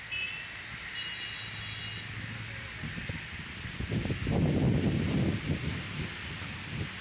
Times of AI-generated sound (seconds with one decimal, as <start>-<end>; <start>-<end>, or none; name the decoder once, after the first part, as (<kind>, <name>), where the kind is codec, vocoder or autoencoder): none